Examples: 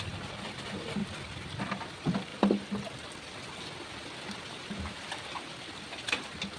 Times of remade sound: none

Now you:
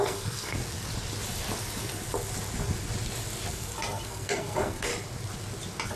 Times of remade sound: 0.0-0.6; 3.5-4.9